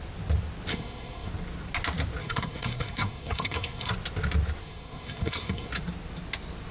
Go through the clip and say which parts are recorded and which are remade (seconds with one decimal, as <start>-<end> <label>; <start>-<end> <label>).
0.0-0.7 recorded; 0.7-1.3 remade; 1.3-2.2 recorded; 2.2-3.9 remade; 3.9-4.6 recorded; 4.6-5.7 remade; 5.7-6.7 recorded